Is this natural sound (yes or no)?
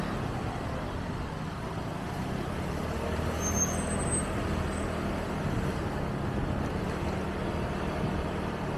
yes